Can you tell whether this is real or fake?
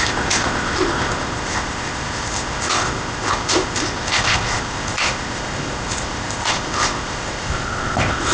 fake